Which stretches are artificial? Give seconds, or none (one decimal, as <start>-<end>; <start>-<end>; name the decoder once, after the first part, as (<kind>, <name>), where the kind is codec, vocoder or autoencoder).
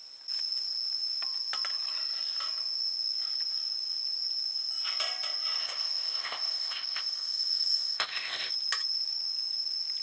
5.6-8.5 (codec, ZipCodec)